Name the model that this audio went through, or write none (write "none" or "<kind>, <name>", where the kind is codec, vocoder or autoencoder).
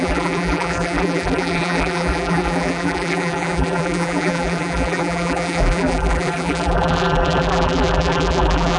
vocoder, BigVGAN v2